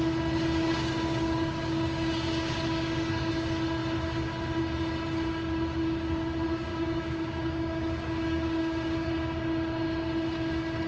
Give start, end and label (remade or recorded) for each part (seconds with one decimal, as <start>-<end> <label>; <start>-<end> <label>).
0.0-0.6 recorded; 0.6-3.3 remade; 3.3-6.7 recorded; 6.7-9.1 remade; 9.1-10.9 recorded